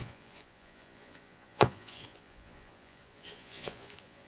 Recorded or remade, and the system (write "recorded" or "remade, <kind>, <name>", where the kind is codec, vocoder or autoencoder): remade, vocoder, Vocos